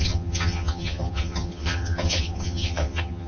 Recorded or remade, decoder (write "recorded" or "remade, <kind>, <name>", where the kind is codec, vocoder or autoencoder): remade, vocoder, HiFi-GAN